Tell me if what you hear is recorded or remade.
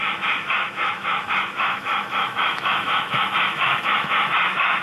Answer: remade